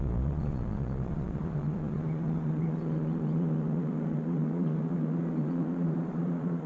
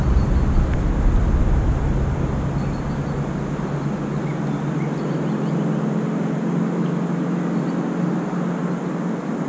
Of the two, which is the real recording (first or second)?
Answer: second